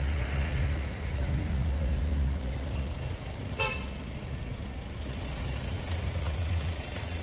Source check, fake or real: fake